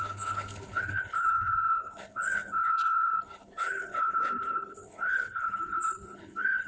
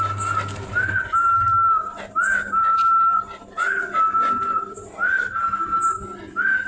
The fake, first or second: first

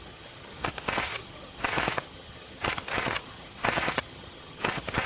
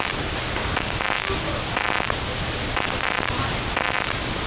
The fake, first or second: first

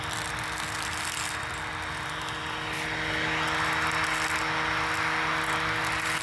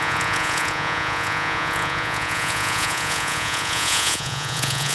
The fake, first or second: second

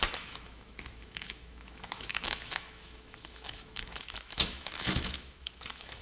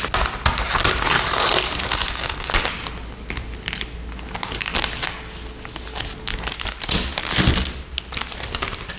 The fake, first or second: first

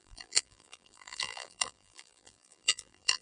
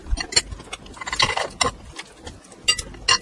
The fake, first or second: first